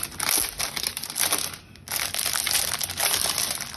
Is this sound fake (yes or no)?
no